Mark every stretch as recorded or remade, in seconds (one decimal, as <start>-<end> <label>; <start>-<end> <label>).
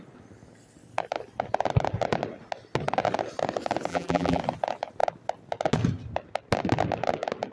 0.0-3.9 recorded; 3.9-4.4 remade; 4.4-7.5 recorded